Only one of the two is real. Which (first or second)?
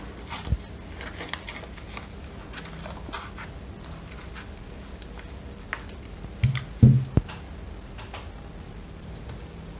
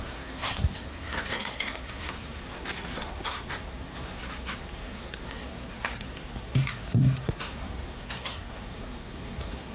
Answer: first